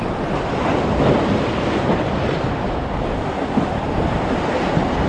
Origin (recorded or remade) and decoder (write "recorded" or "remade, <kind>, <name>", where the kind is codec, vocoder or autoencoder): recorded